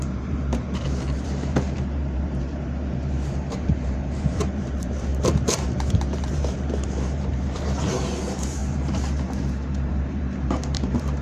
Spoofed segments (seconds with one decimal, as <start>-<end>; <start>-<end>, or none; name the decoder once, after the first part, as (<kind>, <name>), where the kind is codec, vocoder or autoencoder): 0.0-11.2 (vocoder, BigVGAN v2)